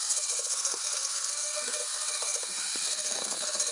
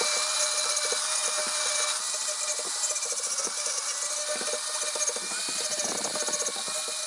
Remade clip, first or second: first